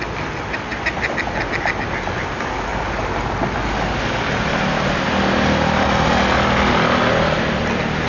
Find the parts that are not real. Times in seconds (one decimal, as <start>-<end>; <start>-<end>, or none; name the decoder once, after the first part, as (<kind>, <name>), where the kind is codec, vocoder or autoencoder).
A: none